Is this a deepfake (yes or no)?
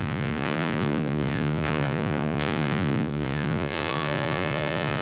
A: yes